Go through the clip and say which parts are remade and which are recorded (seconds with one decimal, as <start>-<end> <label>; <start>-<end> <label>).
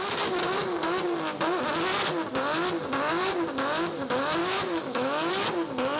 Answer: 0.0-4.4 recorded; 4.4-5.3 remade; 5.3-6.0 recorded